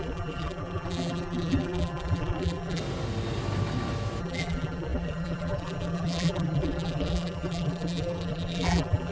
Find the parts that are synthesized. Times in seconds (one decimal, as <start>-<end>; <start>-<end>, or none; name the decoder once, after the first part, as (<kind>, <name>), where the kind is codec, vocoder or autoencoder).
0.0-2.8 (vocoder, BigVGAN v2); 4.2-9.1